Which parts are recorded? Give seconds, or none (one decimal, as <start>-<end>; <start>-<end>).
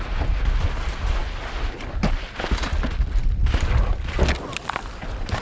0.0-5.4